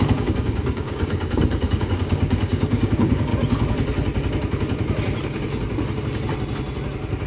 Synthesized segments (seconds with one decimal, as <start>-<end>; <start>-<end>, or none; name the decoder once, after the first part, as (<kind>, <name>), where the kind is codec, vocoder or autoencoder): 0.0-3.3 (codec, DAC)